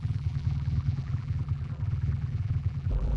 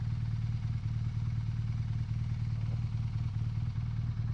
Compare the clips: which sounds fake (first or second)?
first